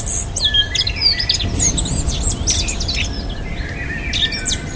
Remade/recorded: recorded